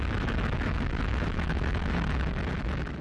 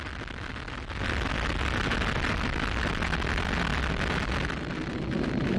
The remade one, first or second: first